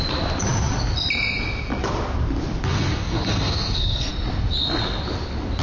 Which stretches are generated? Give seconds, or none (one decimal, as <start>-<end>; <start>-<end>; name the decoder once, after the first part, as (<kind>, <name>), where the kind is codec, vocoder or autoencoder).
2.7-4.1 (codec, SNAC)